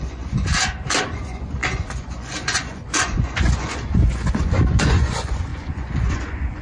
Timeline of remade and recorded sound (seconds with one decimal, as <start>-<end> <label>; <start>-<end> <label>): 0.0-0.5 remade; 0.5-1.0 recorded; 1.0-6.6 remade